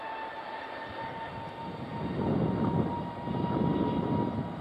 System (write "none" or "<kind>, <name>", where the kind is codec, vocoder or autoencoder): none